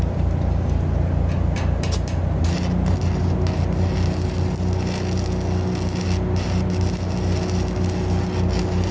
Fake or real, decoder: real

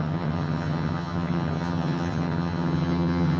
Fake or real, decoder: fake, vocoder, HiFi-GAN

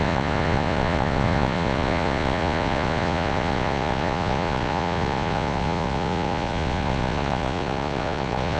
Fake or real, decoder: fake, vocoder, Vocos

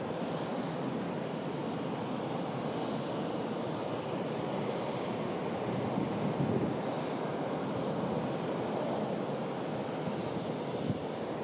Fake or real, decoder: real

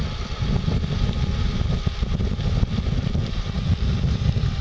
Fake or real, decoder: fake, vocoder, BigVGAN v2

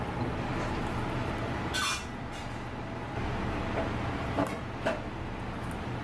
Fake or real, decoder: real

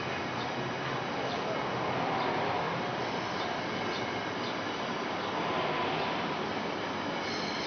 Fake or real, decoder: real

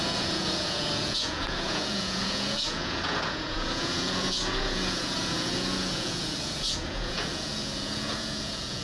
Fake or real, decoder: fake, vocoder, Vocos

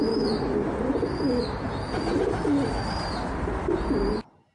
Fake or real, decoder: real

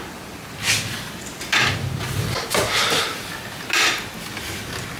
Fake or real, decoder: real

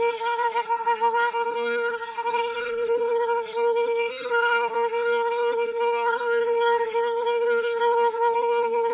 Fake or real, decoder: fake, codec, SNAC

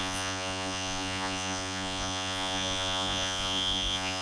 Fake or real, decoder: fake, vocoder, Vocos